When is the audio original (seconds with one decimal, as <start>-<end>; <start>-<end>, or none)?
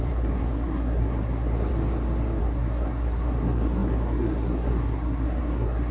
1.7-2.4